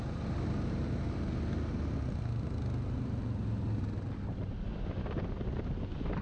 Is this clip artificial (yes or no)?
no